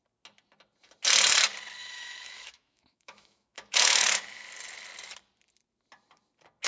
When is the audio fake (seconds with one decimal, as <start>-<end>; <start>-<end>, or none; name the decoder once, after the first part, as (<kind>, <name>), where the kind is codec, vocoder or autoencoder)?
1.8-4.2 (autoencoder, DAC-VAE)